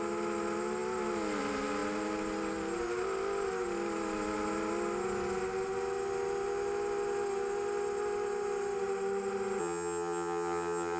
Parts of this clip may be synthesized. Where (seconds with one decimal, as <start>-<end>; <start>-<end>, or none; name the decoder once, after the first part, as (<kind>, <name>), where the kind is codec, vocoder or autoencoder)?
9.6-11.0 (vocoder, HiFi-GAN)